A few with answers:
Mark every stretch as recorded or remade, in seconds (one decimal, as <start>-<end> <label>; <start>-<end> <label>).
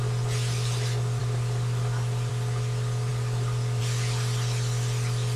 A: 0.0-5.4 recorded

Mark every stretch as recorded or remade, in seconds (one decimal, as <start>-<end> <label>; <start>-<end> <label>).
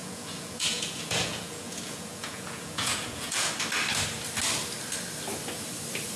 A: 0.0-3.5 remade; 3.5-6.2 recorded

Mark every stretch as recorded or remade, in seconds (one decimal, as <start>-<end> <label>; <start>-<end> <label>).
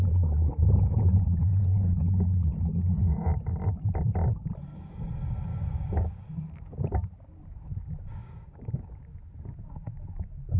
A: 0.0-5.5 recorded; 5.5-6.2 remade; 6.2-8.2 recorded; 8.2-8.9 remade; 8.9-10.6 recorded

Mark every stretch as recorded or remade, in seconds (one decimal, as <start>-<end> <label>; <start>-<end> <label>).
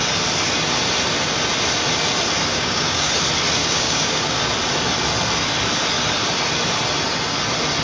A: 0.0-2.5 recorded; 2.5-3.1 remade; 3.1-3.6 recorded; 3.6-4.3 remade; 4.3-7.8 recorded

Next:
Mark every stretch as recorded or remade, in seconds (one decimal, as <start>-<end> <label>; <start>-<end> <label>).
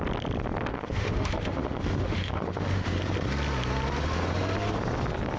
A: 0.0-0.7 recorded; 0.7-3.0 remade; 3.0-5.4 recorded